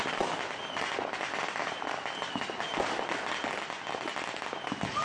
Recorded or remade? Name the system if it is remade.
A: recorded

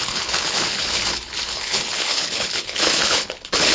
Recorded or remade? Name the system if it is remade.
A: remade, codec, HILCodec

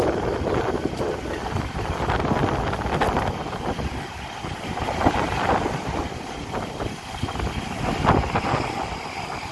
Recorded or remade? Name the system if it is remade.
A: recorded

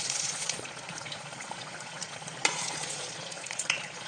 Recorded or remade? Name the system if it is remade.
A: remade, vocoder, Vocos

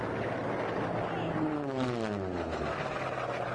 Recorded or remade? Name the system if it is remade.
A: recorded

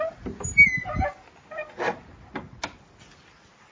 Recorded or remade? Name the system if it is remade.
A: recorded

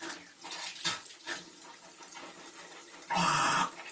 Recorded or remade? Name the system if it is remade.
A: recorded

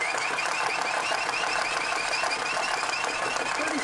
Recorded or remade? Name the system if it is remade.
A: recorded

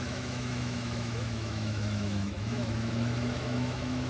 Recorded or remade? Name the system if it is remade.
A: remade, autoencoder, DAC-VAE